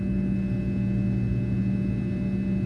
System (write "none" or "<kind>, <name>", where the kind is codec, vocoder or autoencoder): none